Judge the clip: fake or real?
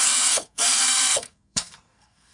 fake